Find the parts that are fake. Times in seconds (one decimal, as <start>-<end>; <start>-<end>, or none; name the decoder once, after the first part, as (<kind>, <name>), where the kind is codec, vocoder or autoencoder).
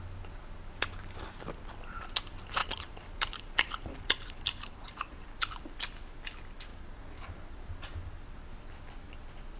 2.6-5.3 (vocoder, BigVGAN v2)